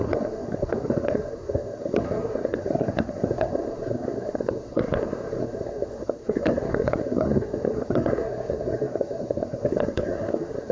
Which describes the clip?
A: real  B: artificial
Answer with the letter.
B